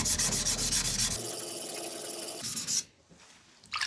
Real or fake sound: real